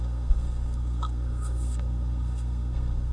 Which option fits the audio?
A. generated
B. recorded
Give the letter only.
A